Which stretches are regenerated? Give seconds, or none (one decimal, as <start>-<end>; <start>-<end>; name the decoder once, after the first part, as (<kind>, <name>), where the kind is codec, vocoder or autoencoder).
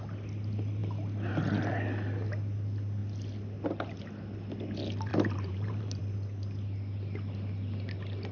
5.1-6.0 (vocoder, BigVGAN v2)